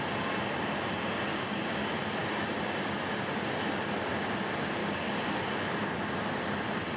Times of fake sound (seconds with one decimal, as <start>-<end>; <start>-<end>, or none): 1.3-1.8; 4.8-5.4

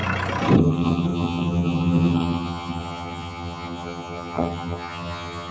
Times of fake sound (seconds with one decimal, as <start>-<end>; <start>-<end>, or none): 0.6-5.5

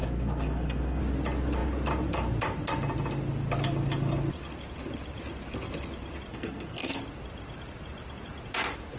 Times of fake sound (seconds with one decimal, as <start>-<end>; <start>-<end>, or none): 0.0-1.0; 6.3-7.0

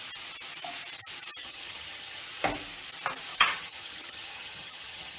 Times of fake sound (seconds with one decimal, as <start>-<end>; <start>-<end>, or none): 1.4-2.2; 3.3-5.2